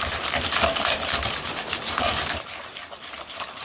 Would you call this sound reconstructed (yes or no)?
yes